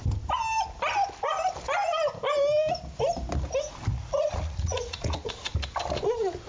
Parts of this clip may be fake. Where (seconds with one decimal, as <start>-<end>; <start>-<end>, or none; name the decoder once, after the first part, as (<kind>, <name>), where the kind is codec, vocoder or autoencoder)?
3.9-5.2 (vocoder, Vocos)